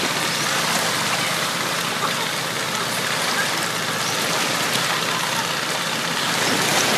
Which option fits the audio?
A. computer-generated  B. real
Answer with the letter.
B